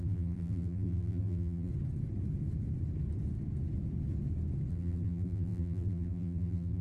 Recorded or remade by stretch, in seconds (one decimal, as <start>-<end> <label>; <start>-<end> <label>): 0.0-1.7 remade; 1.7-4.7 recorded; 4.7-6.8 remade